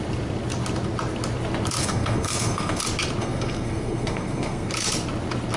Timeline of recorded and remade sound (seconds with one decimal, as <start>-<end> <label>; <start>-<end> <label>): 0.0-1.8 recorded; 1.8-2.8 remade; 2.8-3.2 recorded; 3.2-4.7 remade; 4.7-5.6 recorded